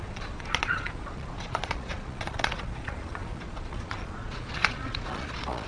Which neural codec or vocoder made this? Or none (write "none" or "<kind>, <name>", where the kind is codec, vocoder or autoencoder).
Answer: vocoder, Vocos